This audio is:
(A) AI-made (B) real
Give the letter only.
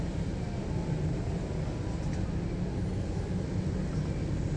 B